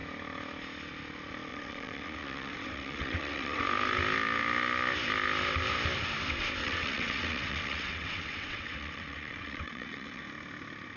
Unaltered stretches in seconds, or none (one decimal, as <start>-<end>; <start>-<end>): 0.0-1.5; 3.6-6.6; 10.2-11.0